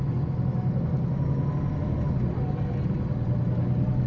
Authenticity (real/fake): real